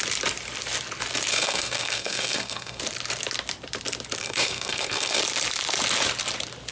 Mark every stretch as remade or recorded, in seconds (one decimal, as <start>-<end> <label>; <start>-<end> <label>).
0.0-1.3 recorded; 1.3-2.8 remade; 2.8-4.2 recorded; 4.2-5.2 remade; 5.2-6.7 recorded

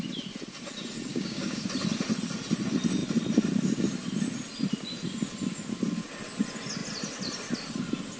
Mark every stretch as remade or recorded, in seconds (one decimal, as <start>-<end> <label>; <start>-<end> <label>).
0.0-1.1 recorded; 1.1-1.6 remade; 1.6-8.2 recorded

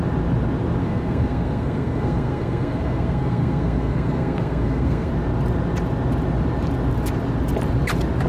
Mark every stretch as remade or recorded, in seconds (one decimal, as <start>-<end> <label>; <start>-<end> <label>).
0.0-0.8 recorded; 0.8-5.1 remade; 5.1-8.3 recorded

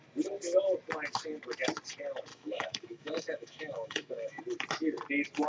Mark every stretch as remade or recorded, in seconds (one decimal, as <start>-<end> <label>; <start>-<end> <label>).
0.0-2.3 recorded; 2.3-4.4 remade; 4.4-5.5 recorded

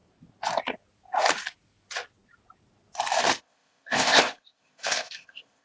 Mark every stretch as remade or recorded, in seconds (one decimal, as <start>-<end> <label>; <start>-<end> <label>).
0.0-3.4 recorded; 3.4-5.6 remade